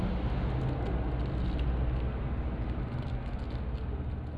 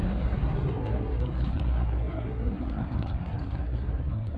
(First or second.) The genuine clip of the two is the first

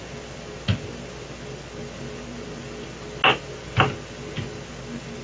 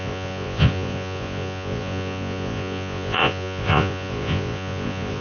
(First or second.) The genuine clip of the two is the first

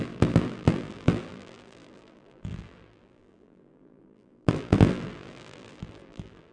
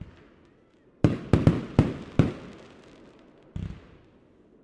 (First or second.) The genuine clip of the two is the second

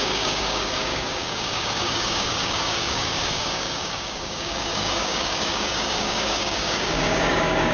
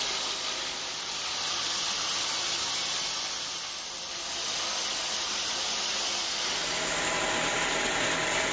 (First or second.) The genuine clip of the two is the second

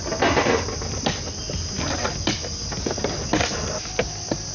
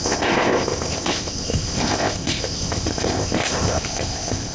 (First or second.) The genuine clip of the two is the first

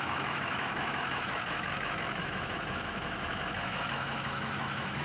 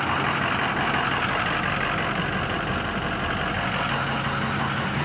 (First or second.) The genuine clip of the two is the second